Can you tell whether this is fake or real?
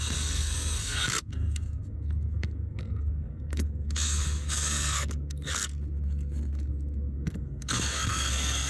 fake